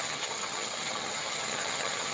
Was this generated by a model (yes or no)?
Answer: yes